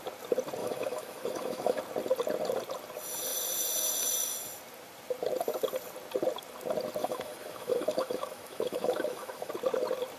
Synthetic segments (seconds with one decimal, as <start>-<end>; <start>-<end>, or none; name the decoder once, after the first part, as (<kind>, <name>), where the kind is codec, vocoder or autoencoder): 0.6-1.8 (autoencoder, DAC-VAE); 7.0-9.5